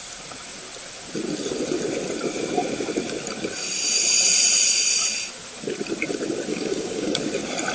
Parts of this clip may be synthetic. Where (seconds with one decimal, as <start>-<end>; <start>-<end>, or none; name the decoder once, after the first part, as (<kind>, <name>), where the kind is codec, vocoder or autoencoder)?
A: 6.5-7.2 (codec, DAC)